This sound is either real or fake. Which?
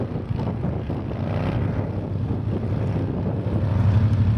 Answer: real